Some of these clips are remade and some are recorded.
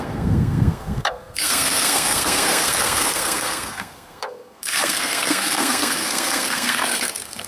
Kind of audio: remade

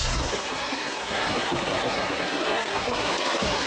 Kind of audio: remade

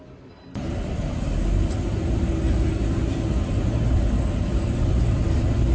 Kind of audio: recorded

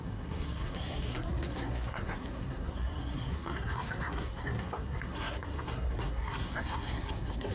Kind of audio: remade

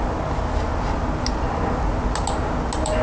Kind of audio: recorded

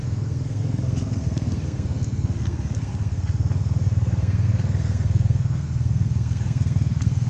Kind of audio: remade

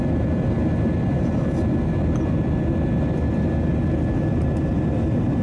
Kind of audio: recorded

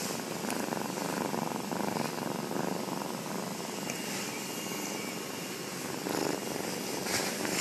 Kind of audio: recorded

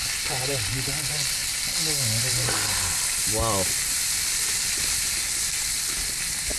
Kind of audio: recorded